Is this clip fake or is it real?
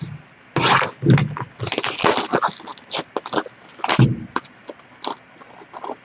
real